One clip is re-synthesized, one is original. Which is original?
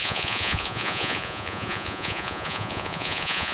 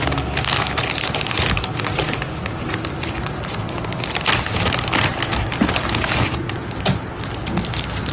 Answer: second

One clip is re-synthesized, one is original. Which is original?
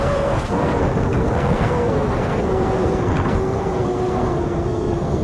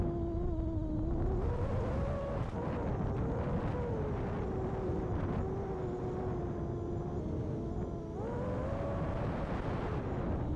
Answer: second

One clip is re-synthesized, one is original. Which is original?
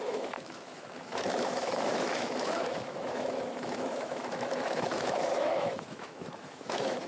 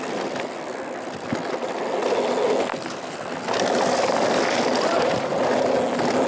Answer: second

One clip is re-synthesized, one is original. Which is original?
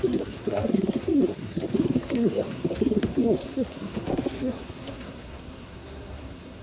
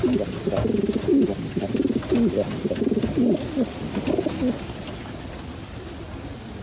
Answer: second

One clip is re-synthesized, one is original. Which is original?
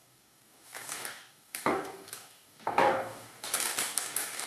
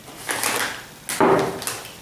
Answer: second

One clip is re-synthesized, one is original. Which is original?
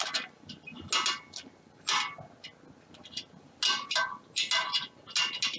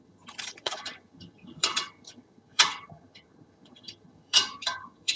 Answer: first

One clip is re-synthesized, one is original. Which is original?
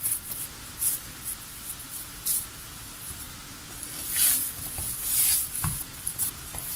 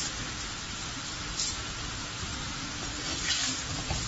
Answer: first